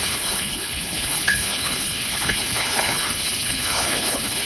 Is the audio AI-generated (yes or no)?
yes